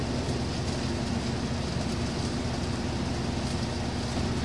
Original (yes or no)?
yes